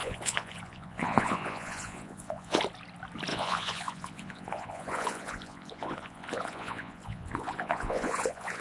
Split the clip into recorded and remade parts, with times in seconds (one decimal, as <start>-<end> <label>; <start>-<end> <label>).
0.0-2.6 remade; 2.6-3.3 recorded; 3.3-8.6 remade